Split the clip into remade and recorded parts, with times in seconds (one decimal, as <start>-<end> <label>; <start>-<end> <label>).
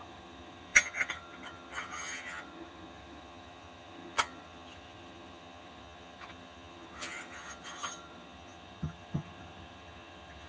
0.0-10.5 remade